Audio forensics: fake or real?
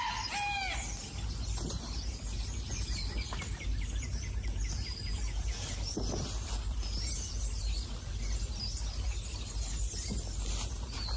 real